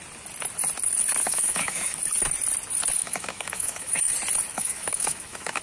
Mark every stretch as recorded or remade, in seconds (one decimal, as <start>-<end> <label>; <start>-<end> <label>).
0.0-1.2 recorded; 1.2-2.0 remade; 2.0-3.0 recorded; 3.0-4.1 remade; 4.1-4.5 recorded; 4.5-5.6 remade